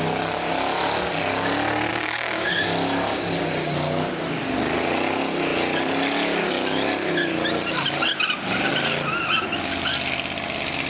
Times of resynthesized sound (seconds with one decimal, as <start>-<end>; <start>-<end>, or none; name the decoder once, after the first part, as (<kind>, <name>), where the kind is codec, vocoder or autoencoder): 1.9-2.5 (codec, DAC)